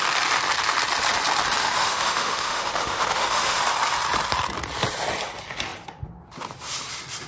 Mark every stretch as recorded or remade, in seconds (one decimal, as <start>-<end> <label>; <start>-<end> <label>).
0.0-1.6 recorded; 1.6-3.6 remade; 3.6-7.3 recorded